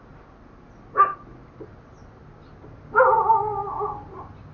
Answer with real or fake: real